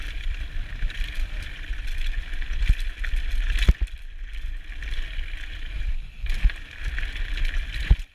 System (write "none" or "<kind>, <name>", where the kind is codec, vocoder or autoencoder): vocoder, BigVGAN v2